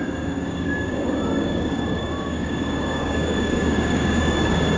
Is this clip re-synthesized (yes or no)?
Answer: yes